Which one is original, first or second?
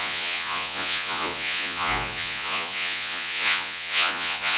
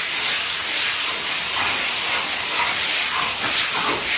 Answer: second